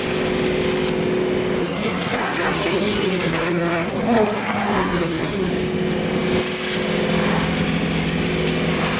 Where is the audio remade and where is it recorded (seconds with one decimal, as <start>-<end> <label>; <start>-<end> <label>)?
0.0-1.6 recorded; 1.6-5.5 remade; 5.5-9.0 recorded